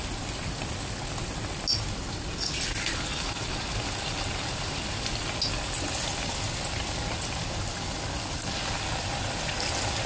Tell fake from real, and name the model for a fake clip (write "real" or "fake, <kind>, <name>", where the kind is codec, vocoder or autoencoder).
real